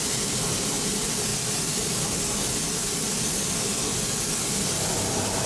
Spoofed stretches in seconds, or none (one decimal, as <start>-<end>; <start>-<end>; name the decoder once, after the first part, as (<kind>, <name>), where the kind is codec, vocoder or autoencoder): 0.0-1.3 (vocoder, BigVGAN v2); 3.6-5.5